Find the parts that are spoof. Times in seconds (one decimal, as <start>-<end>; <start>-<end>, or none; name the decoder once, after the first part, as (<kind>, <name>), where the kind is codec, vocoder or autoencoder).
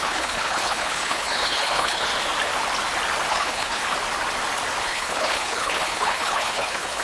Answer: 0.0-2.1 (codec, HILCodec); 3.3-3.8; 4.8-7.0